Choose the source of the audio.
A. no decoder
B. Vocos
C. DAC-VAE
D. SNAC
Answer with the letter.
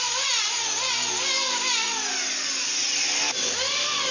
A